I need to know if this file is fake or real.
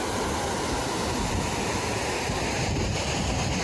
real